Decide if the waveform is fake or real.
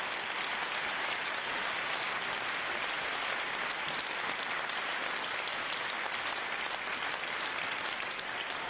real